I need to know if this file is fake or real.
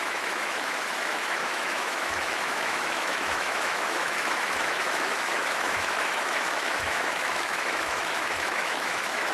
fake